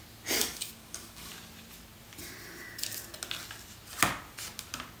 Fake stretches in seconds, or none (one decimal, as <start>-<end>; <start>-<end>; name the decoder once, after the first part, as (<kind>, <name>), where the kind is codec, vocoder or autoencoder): 0.4-1.3 (codec, DAC)